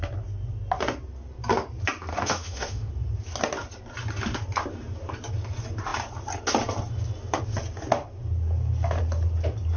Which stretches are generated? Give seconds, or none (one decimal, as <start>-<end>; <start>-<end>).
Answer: 2.1-2.9